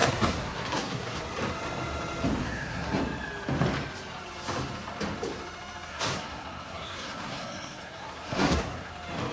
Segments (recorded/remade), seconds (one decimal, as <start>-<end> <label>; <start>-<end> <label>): 0.0-1.2 remade; 1.2-2.4 recorded; 2.4-3.0 remade; 3.0-5.9 recorded; 5.9-8.9 remade; 8.9-9.3 recorded